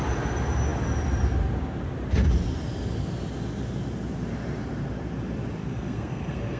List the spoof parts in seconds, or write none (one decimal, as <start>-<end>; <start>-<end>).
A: 5.6-6.6